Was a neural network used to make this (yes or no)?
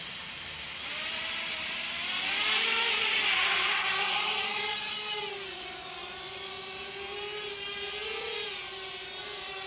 yes